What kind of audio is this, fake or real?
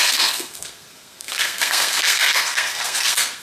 fake